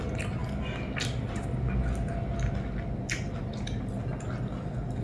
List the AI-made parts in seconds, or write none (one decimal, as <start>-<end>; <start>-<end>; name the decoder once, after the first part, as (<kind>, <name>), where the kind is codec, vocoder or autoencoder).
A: none